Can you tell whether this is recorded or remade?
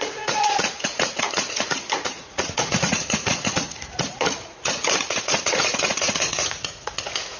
remade